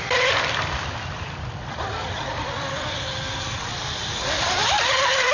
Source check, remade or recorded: remade